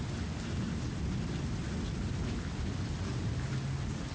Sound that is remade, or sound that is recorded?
recorded